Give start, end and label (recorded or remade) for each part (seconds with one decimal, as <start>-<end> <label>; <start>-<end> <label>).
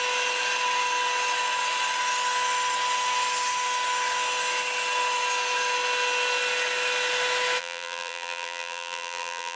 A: 0.0-7.6 recorded; 7.6-9.6 remade